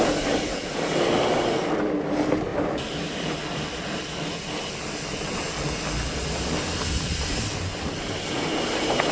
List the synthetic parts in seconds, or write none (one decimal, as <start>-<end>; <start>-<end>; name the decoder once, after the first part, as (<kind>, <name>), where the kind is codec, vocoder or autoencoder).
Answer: none